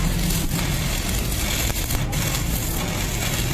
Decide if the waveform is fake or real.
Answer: real